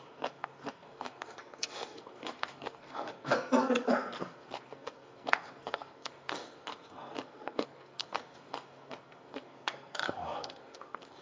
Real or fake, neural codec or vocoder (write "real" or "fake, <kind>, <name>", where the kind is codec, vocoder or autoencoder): fake, codec, SNAC